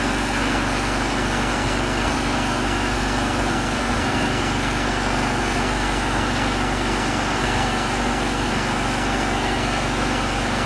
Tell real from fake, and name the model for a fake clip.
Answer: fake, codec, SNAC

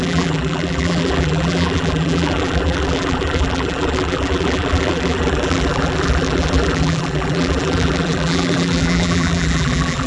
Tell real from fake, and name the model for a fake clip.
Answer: fake, vocoder, BigVGAN v2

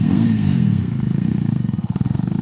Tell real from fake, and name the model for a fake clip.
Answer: fake, codec, SNAC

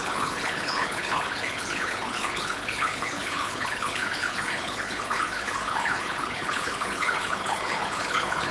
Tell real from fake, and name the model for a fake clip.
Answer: fake, codec, HILCodec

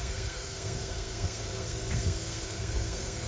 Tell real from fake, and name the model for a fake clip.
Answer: fake, codec, SNAC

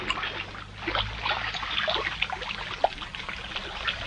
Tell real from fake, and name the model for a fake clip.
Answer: real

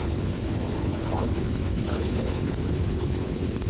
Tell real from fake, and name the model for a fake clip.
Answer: fake, codec, HILCodec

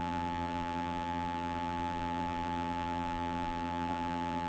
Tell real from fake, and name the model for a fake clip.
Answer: fake, vocoder, BigVGAN v2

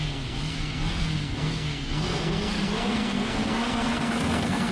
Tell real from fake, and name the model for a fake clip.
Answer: fake, codec, SNAC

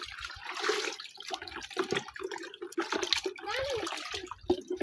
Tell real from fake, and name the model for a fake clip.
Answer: real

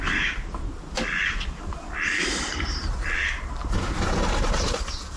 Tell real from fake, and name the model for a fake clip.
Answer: real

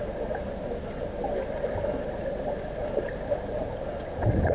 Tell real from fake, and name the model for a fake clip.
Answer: real